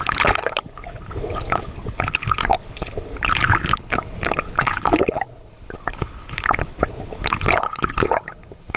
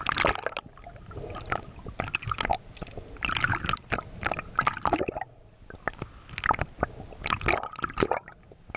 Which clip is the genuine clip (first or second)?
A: second